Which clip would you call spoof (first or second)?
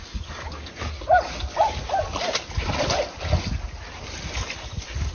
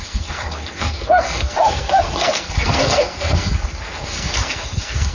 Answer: second